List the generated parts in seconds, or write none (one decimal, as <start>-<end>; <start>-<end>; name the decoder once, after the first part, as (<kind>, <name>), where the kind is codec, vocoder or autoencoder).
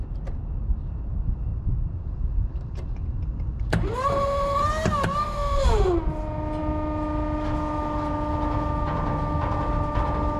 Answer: 1.5-3.6 (vocoder, BigVGAN v2)